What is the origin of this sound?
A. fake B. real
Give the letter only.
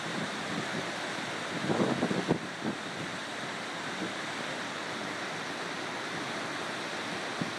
B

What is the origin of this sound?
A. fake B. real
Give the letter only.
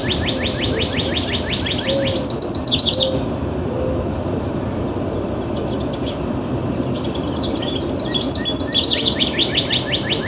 B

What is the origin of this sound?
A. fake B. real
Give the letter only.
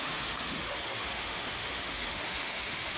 A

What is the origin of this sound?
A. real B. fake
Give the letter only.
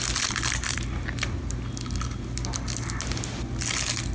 A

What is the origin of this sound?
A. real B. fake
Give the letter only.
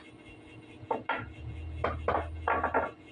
A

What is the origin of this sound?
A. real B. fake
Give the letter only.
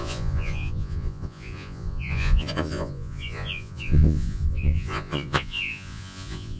B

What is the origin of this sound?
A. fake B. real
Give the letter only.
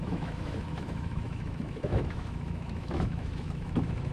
A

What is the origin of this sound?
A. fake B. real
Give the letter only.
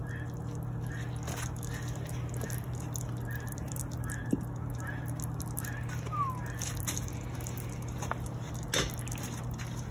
B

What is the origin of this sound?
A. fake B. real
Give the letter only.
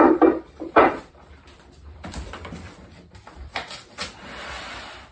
A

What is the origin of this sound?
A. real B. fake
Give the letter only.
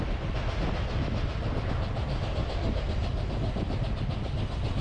A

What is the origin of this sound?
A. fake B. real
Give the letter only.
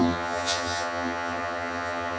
A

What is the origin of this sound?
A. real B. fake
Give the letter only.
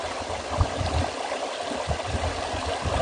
A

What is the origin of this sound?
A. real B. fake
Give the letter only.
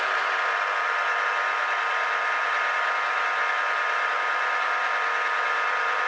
A